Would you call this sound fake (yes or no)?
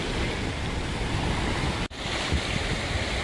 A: no